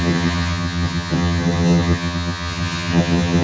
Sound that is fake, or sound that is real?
fake